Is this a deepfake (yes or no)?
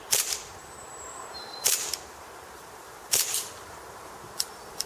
yes